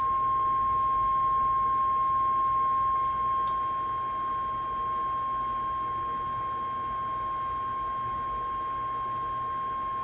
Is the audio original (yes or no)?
yes